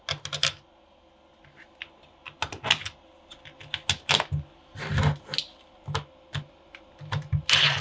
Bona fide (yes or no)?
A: yes